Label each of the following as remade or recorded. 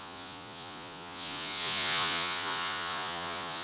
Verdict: remade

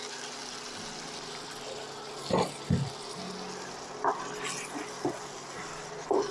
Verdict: recorded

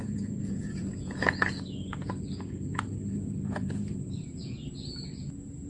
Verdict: remade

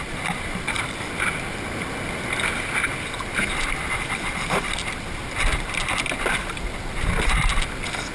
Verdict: recorded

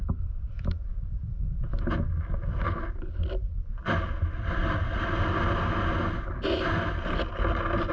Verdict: recorded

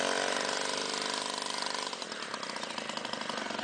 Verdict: recorded